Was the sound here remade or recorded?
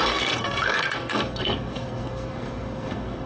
remade